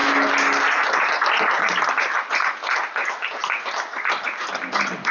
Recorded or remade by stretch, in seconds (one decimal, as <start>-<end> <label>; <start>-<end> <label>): 0.0-5.1 recorded

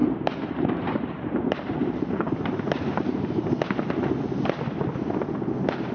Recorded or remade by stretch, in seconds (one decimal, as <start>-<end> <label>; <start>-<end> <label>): 0.0-3.5 remade; 3.5-5.9 recorded

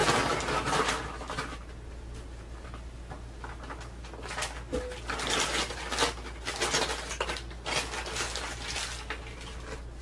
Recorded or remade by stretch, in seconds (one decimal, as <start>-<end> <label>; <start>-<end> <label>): 0.0-10.0 recorded

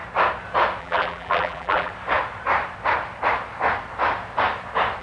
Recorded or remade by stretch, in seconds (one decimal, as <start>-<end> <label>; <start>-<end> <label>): 0.0-0.8 recorded; 0.8-1.9 remade; 1.9-5.0 recorded

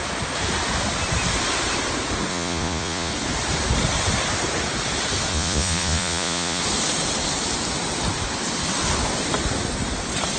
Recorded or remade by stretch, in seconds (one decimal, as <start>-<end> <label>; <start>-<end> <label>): 0.0-2.3 recorded; 2.3-3.1 remade; 3.1-5.3 recorded; 5.3-6.6 remade; 6.6-10.4 recorded